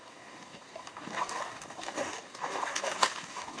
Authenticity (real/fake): fake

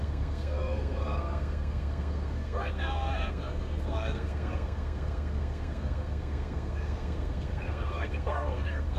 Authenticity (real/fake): fake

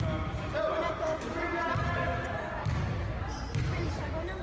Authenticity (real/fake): real